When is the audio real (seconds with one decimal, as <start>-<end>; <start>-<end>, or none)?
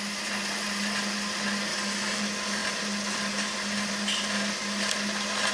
0.0-1.7; 2.2-5.5